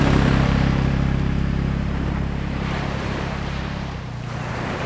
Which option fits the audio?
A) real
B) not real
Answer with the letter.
B